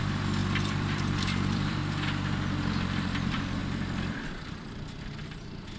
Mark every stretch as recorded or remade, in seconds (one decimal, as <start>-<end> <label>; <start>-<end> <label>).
0.0-1.8 remade; 1.8-2.9 recorded; 2.9-3.6 remade; 3.6-5.0 recorded; 5.0-5.8 remade